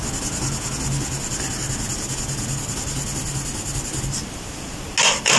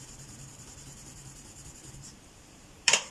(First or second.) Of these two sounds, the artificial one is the second